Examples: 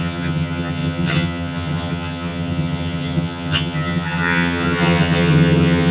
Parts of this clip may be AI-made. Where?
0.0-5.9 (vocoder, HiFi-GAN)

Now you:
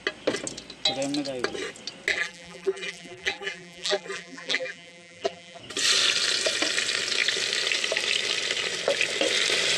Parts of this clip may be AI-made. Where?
2.1-5.6 (vocoder, BigVGAN v2)

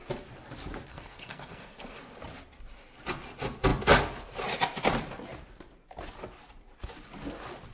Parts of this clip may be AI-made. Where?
0.9-2.0 (codec, SNAC)

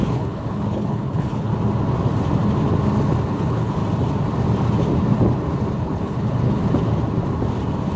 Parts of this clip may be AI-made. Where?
0.0-1.5 (codec, HILCodec); 3.3-3.8; 5.8-6.6

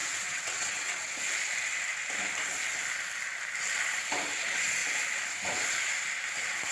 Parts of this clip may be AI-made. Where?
0.0-1.2 (vocoder, WaveNeXt)

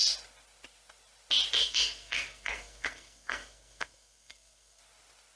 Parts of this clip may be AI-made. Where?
1.6-4.8 (codec, SNAC)

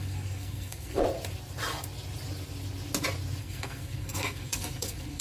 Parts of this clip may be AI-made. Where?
0.0-1.0 (codec, SNAC); 3.4-5.2

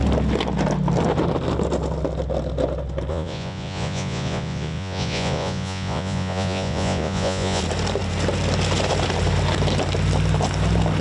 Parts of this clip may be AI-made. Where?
3.1-7.6 (vocoder, Vocos)